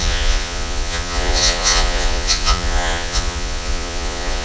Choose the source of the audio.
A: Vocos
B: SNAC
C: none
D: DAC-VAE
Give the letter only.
A